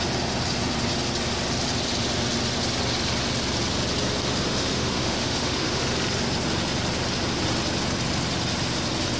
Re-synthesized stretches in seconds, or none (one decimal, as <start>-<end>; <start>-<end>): 4.5-5.8